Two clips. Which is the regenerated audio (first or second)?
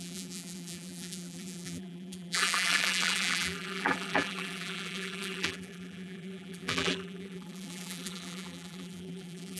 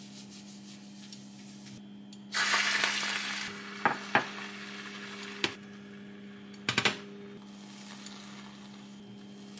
first